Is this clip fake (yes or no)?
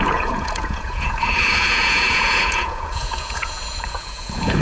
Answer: yes